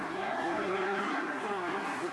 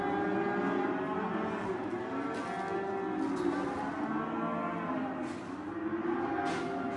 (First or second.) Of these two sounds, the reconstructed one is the first